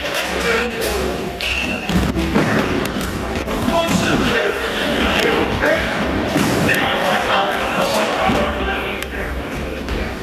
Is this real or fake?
fake